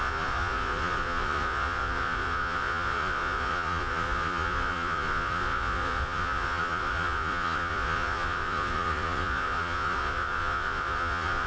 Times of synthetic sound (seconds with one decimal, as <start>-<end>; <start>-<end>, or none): 0.0-11.5